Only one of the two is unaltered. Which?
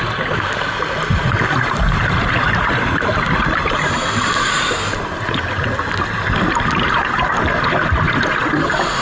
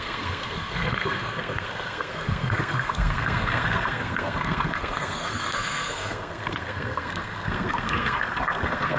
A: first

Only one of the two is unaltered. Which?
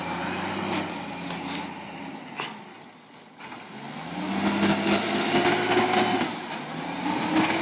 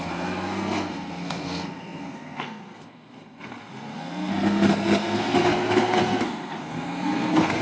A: first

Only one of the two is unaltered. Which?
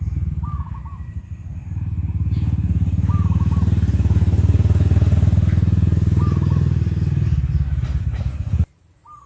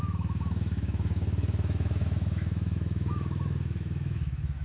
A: first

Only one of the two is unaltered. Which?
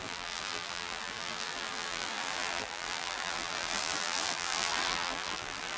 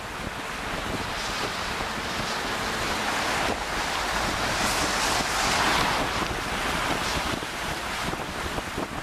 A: second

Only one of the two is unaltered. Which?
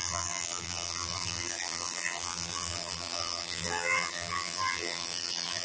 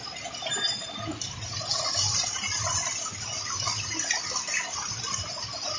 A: second